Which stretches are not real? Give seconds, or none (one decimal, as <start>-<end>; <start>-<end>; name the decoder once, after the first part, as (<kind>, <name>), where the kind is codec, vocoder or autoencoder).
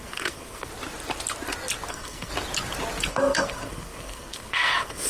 0.0-0.7 (codec, SNAC); 1.9-2.3; 3.1-5.1